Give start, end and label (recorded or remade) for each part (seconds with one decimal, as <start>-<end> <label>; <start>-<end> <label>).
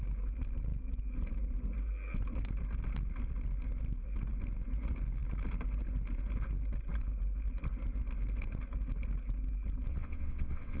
0.0-9.9 recorded; 9.9-10.8 remade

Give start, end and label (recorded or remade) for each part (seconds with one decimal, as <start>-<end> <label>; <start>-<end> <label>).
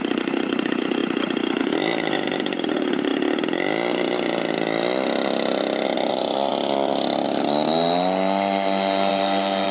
0.0-1.0 remade; 1.0-1.6 recorded; 1.6-3.1 remade; 3.1-6.1 recorded; 6.1-6.5 remade; 6.5-9.1 recorded; 9.1-9.7 remade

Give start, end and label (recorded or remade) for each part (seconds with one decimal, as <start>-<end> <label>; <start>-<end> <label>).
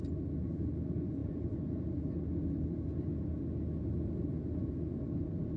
0.0-5.6 recorded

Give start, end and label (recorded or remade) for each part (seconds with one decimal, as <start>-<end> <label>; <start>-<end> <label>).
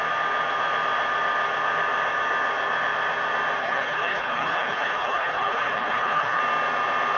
0.0-3.6 recorded; 3.6-6.4 remade; 6.4-7.2 recorded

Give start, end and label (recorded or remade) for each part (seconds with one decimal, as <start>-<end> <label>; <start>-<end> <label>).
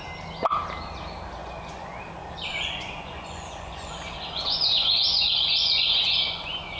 0.0-1.4 recorded; 1.4-2.0 remade; 2.0-2.5 recorded; 2.5-6.8 remade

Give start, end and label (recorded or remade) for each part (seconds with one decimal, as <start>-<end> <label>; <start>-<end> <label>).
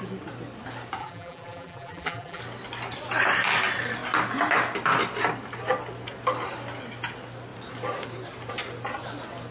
0.0-1.0 recorded; 1.0-2.4 remade; 2.4-9.5 recorded